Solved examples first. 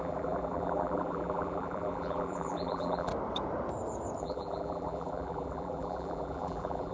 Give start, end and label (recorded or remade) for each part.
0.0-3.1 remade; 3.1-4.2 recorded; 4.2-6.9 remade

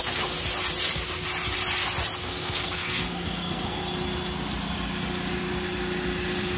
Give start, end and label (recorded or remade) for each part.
0.0-2.2 recorded; 2.2-3.8 remade; 3.8-6.6 recorded

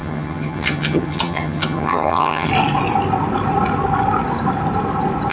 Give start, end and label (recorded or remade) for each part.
0.0-2.5 remade; 2.5-5.3 recorded

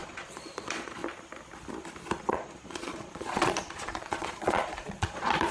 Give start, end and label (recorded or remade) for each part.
0.0-1.0 remade; 1.0-2.2 recorded; 2.2-5.5 remade

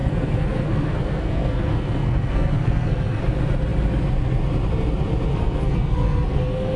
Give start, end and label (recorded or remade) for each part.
0.0-3.2 remade; 3.2-5.3 recorded; 5.3-6.8 remade

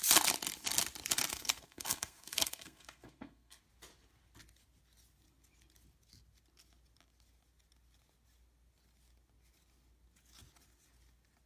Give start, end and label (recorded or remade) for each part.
0.0-1.3 recorded; 1.3-3.6 remade; 3.6-11.5 recorded